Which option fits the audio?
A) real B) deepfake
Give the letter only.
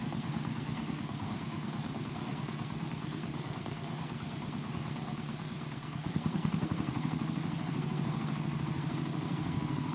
B